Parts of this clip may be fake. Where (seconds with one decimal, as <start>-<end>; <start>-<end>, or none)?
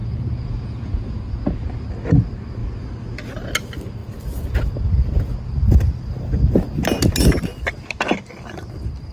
0.0-1.4